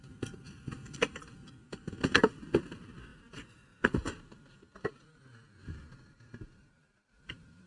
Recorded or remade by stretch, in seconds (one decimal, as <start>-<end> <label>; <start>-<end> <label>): 0.0-3.1 recorded; 3.1-4.2 remade; 4.2-5.6 recorded; 5.6-7.7 remade